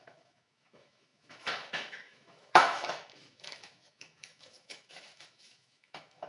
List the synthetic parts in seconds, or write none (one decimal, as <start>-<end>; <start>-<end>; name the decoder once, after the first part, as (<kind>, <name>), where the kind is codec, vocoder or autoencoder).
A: 0.0-6.3 (autoencoder, DAC-VAE)